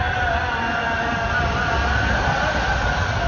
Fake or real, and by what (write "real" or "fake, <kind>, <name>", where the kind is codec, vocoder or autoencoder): real